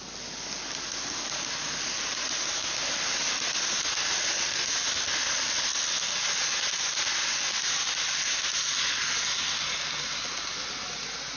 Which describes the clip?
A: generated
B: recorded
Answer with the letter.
B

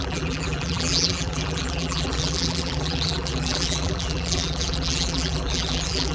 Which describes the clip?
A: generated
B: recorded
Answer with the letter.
A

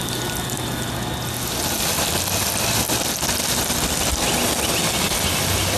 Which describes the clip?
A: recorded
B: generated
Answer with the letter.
A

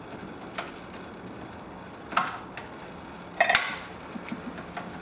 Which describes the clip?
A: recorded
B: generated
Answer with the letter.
A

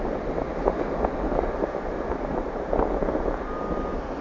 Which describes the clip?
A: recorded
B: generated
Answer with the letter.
A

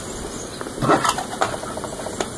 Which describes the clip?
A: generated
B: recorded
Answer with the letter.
B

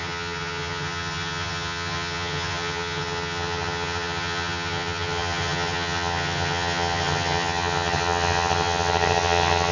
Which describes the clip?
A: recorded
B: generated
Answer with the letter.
B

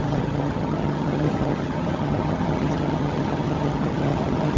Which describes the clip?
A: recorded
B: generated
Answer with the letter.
B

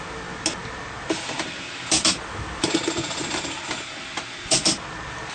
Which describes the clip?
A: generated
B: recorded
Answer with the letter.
B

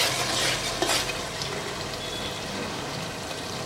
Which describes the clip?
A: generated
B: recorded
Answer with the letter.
B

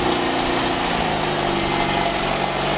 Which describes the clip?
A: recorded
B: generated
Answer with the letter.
A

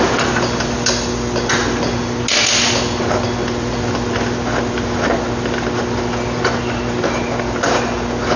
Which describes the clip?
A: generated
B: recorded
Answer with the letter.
B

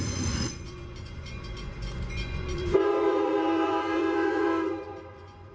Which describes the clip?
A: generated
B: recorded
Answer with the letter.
A